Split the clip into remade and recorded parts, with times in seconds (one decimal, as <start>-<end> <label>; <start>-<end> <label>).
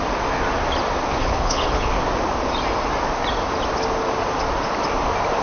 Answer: 0.0-1.1 recorded; 1.1-1.9 remade; 1.9-5.4 recorded